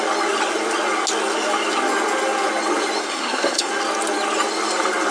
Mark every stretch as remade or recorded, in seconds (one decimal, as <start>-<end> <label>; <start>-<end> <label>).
0.0-3.0 recorded; 3.0-3.7 remade; 3.7-5.1 recorded